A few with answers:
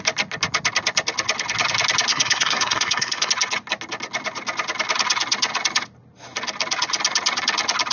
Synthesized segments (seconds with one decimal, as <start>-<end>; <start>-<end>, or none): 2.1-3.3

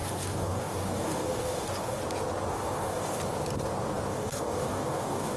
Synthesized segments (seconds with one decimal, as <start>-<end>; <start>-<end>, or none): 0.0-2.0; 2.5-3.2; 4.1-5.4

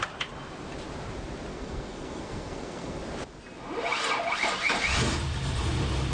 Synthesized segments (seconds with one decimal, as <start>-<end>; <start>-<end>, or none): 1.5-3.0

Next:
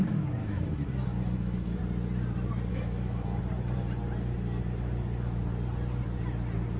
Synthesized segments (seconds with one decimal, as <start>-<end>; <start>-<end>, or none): 0.4-1.8; 2.7-3.4

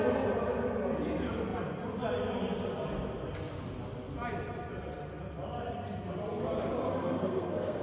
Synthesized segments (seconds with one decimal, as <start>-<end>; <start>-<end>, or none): 7.0-7.8